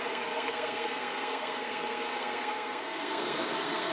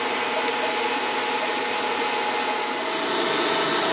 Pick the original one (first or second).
second